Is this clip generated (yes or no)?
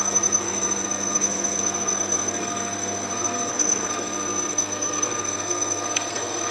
yes